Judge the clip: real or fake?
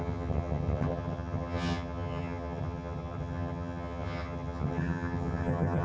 fake